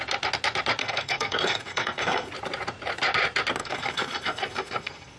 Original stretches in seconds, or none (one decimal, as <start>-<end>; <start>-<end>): 0.0-0.8; 2.3-3.6